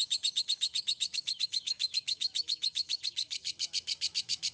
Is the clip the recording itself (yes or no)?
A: no